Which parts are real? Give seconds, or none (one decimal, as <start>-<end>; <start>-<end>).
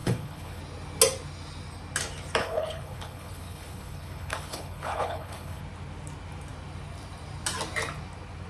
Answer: 0.6-2.4; 5.6-8.5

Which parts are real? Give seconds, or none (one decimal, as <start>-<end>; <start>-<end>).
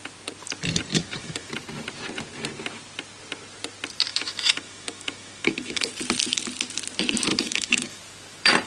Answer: 0.0-0.9; 1.5-4.1; 5.9-7.3; 8.0-8.7